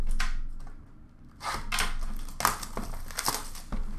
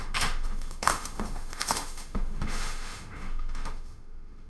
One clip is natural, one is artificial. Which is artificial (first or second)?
second